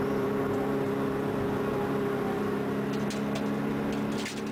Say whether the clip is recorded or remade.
recorded